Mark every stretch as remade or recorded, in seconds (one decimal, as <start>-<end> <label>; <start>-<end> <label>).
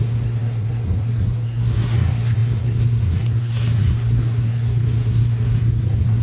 0.0-6.2 remade